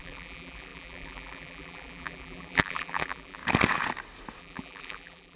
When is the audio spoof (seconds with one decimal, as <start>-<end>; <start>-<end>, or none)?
0.0-3.4; 4.4-5.4